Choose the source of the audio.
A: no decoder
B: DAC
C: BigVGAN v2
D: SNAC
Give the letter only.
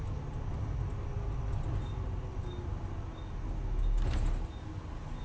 A